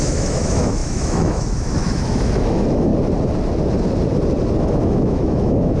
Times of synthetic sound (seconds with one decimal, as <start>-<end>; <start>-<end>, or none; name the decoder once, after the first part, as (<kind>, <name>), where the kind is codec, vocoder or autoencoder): 0.0-2.9 (autoencoder, DAC-VAE); 4.6-5.8